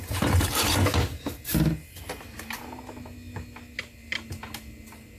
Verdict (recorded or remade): recorded